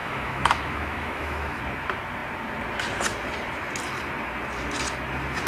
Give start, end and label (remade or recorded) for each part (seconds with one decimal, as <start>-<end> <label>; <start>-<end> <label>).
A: 0.0-1.6 remade; 1.6-5.5 recorded